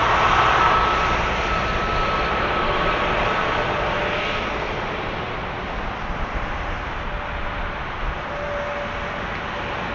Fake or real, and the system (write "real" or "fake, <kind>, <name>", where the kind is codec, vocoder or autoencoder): real